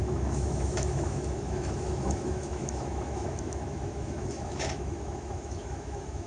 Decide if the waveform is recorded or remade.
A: remade